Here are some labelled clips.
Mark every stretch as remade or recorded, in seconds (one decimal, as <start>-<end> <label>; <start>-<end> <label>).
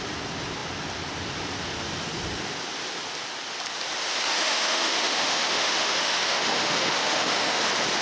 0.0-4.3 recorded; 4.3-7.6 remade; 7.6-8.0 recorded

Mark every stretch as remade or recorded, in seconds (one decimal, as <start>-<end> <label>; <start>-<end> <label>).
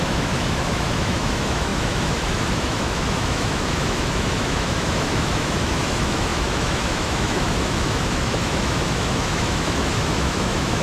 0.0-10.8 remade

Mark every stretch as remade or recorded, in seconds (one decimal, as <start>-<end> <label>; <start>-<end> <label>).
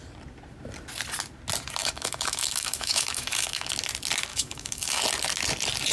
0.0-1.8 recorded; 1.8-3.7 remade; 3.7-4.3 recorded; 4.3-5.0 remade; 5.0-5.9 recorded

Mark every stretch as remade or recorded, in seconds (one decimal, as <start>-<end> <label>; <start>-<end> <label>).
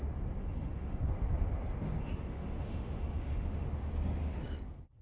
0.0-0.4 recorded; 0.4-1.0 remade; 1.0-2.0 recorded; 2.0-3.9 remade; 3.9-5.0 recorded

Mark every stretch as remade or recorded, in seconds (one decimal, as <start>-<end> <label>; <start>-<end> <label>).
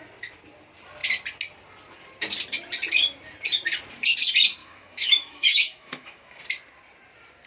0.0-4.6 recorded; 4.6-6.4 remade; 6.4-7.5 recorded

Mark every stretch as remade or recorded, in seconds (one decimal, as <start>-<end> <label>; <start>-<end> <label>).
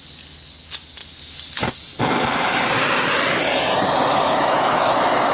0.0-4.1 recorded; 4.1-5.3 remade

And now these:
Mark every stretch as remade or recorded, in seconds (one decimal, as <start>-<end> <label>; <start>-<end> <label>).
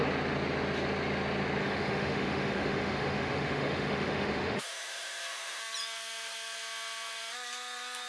0.0-1.6 recorded; 1.6-5.6 remade; 5.6-8.1 recorded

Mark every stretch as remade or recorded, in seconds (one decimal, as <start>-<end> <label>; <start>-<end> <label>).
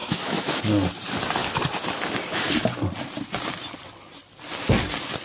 0.0-0.6 remade; 0.6-5.2 recorded